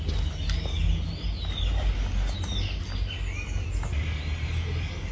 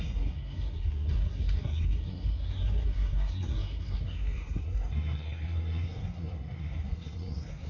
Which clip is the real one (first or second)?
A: first